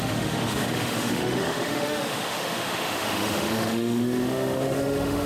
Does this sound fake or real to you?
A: fake